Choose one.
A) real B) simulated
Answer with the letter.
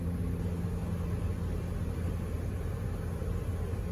A